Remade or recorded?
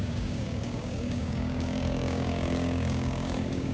remade